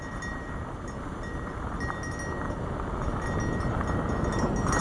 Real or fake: real